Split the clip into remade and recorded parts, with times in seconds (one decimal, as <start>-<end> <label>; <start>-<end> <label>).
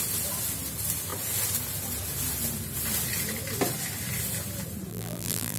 0.0-4.9 recorded; 4.9-5.6 remade